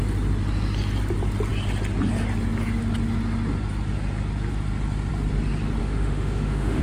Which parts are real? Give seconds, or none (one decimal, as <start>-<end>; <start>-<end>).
0.0-5.8